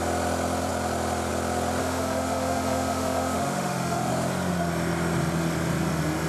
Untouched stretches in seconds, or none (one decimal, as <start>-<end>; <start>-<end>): 0.0-1.8; 4.1-6.3